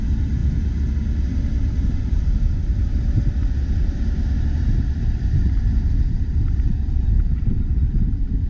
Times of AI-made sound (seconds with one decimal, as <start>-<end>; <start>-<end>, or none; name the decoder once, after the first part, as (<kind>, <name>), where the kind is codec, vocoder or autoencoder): 0.0-0.4 (vocoder, BigVGAN v2); 1.2-8.5